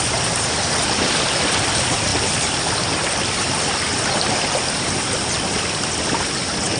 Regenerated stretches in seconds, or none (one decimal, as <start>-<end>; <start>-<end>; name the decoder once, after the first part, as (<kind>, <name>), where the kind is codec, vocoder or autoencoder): none